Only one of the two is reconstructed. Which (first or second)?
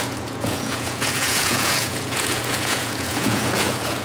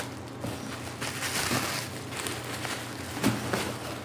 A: first